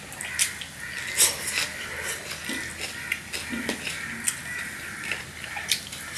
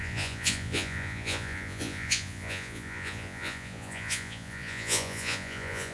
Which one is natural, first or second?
first